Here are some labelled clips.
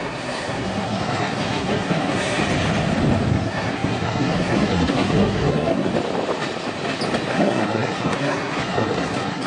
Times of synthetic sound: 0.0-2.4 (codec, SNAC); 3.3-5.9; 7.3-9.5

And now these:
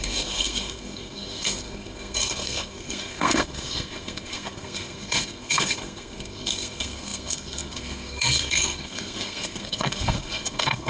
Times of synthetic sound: 0.0-10.9 (codec, SNAC)

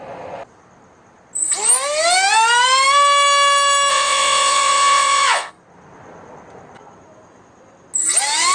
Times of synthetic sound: 3.9-5.5 (vocoder, Vocos)

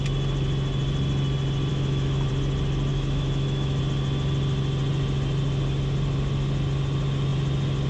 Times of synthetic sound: 1.7-2.3 (autoencoder, DAC-VAE); 2.9-3.8